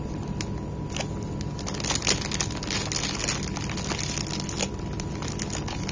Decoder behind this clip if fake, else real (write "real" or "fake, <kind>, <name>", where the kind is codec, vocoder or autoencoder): real